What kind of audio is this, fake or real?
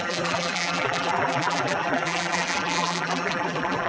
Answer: fake